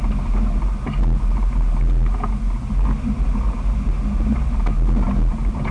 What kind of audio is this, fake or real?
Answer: real